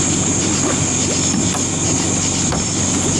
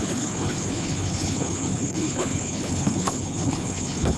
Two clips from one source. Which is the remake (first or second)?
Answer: second